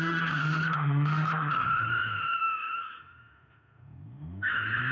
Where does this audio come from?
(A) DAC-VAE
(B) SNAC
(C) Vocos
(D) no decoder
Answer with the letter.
A